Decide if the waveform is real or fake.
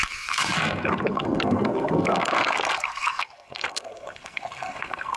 fake